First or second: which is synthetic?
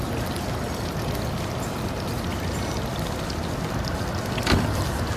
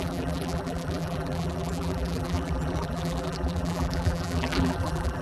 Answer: second